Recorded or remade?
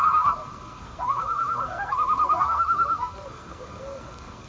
remade